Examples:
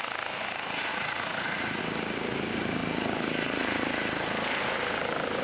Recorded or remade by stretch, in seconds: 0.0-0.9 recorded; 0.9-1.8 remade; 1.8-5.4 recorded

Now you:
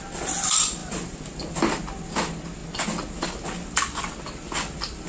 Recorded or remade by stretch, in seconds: 0.0-5.1 recorded

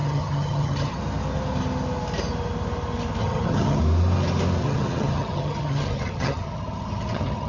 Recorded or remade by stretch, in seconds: 0.0-1.0 remade; 1.0-3.2 recorded; 3.2-3.8 remade; 3.8-4.6 recorded; 4.6-7.5 remade

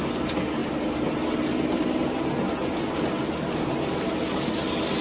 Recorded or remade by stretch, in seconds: 0.0-5.0 recorded

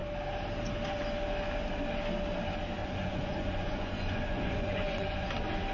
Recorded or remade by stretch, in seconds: 0.0-2.8 recorded; 2.8-5.3 remade; 5.3-5.7 recorded

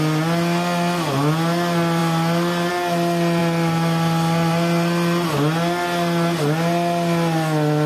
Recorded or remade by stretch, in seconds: 0.0-7.9 recorded

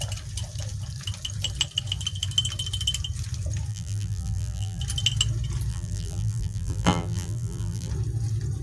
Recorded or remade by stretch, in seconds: 0.0-3.7 recorded; 3.7-4.8 remade; 4.8-5.7 recorded; 5.7-7.9 remade; 7.9-8.6 recorded

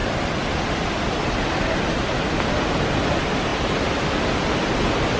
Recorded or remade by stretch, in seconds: 0.0-5.2 recorded